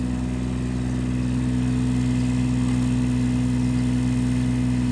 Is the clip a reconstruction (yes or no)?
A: no